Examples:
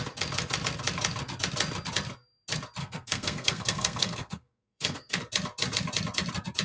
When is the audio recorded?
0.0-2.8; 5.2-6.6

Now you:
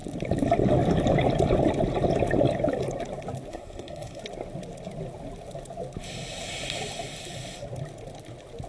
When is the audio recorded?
0.0-3.5; 4.2-8.7

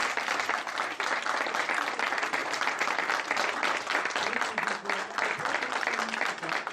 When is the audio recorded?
0.0-6.7

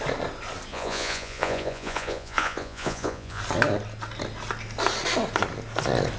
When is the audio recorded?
0.0-0.7; 3.4-6.2